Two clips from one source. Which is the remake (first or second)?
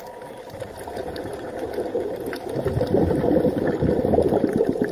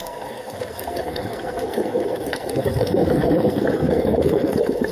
second